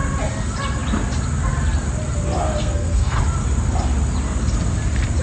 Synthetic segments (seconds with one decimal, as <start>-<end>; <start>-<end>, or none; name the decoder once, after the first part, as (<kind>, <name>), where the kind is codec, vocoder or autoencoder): 2.6-3.2 (codec, SNAC)

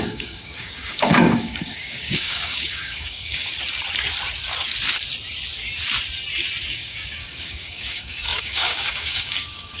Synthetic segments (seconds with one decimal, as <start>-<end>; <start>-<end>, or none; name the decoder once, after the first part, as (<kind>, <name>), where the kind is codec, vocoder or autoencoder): 0.0-3.5 (codec, DAC); 6.7-9.8

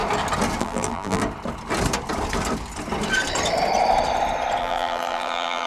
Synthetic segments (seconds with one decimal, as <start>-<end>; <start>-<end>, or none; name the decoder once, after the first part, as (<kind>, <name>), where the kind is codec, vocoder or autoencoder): 0.6-1.2 (vocoder, BigVGAN v2); 4.6-5.7

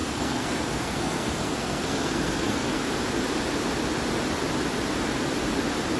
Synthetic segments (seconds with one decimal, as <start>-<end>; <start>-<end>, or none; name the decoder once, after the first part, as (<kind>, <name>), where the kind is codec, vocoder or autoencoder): 0.0-2.9 (codec, SNAC)

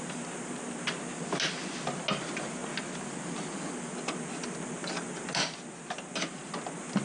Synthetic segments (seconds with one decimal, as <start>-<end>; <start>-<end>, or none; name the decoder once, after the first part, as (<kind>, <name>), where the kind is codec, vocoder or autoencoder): none

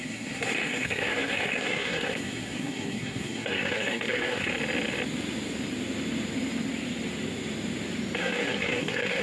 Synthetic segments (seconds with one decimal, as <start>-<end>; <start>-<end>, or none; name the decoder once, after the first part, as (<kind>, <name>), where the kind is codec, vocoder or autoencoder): 0.0-4.5 (codec, SNAC); 8.2-9.2

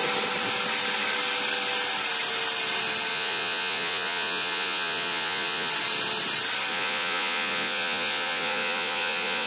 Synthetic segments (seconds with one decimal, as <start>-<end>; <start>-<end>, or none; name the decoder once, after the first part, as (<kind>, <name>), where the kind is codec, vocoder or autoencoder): 3.1-5.7 (vocoder, Vocos); 6.7-9.5

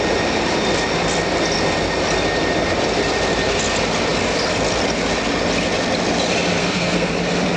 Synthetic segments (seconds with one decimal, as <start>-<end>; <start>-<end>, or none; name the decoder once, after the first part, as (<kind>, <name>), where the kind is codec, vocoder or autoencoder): 6.6-7.1 (codec, SNAC)